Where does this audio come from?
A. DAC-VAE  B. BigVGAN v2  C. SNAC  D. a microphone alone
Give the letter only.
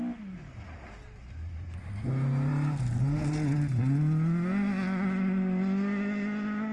D